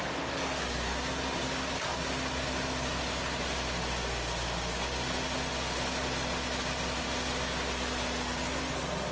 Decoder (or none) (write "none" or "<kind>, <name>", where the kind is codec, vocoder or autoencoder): none